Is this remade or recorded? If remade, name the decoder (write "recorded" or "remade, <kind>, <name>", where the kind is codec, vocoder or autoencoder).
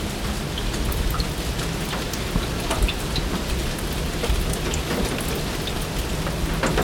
recorded